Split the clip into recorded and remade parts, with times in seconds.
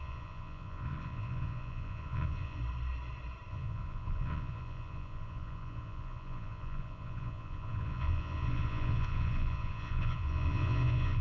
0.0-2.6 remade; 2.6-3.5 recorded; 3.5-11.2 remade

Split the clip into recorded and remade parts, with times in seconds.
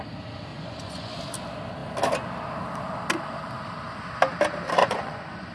0.0-0.5 recorded; 0.5-1.2 remade; 1.2-4.8 recorded; 4.8-5.5 remade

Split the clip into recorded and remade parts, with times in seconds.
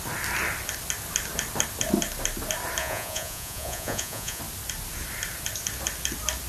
0.0-2.8 recorded; 2.8-4.4 remade; 4.4-6.5 recorded